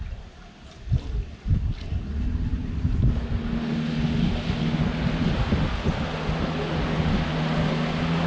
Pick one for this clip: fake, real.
real